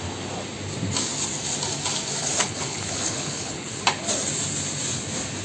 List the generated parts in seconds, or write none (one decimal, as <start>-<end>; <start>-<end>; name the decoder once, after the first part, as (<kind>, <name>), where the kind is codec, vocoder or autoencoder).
2.2-3.8 (codec, HILCodec)